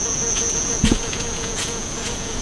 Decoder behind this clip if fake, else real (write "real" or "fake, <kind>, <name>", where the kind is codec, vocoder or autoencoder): fake, vocoder, Vocos